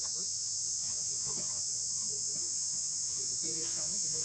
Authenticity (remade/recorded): remade